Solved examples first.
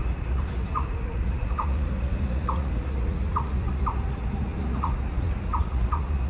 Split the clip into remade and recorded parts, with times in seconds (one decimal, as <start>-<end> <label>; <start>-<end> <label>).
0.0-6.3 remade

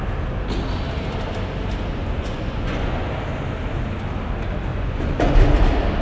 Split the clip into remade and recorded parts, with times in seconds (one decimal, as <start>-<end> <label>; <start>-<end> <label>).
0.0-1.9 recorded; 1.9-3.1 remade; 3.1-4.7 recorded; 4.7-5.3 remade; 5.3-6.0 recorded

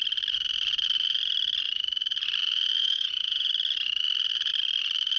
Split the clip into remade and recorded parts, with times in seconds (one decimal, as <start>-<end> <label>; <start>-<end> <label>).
0.0-2.8 recorded; 2.8-3.5 remade; 3.5-5.2 recorded

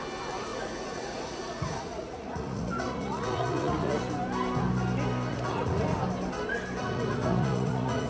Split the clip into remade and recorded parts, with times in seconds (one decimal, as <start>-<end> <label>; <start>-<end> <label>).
0.0-0.5 recorded; 0.5-4.0 remade; 4.0-5.3 recorded; 5.3-5.8 remade; 5.8-6.8 recorded; 6.8-8.1 remade

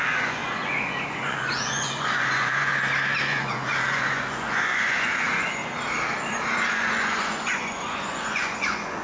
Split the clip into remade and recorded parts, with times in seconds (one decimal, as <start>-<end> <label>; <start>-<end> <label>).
0.0-2.7 remade; 2.7-3.2 recorded; 3.2-5.6 remade; 5.6-6.7 recorded; 6.7-9.0 remade

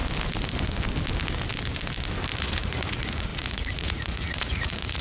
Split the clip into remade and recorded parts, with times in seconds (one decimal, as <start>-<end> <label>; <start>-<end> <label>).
0.0-2.4 recorded; 2.4-5.0 remade